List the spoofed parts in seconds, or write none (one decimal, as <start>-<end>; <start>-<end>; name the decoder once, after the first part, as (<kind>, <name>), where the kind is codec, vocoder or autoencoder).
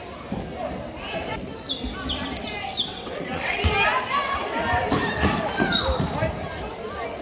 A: 2.9-3.6 (vocoder, WaveNeXt)